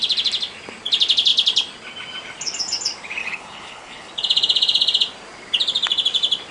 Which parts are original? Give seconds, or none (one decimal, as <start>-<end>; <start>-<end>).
0.0-3.2; 4.1-6.5